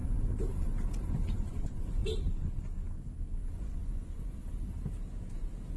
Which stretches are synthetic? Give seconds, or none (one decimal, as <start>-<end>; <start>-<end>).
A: 1.4-2.0; 3.5-4.4